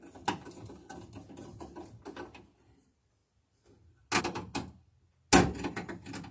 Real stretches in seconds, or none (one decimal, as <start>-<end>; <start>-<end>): 0.0-6.3